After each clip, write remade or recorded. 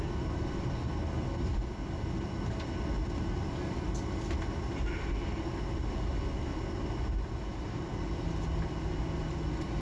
recorded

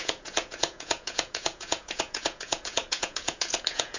remade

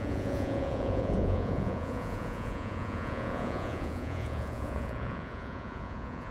remade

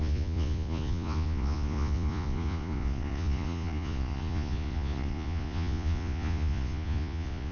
remade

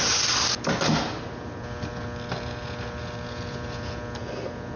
recorded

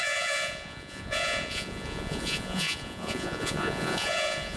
remade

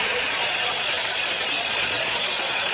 remade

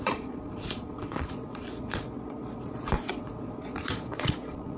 remade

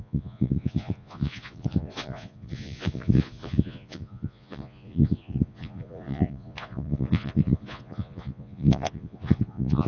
remade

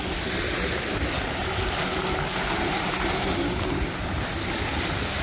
recorded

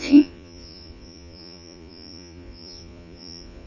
remade